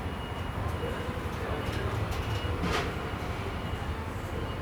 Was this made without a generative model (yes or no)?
yes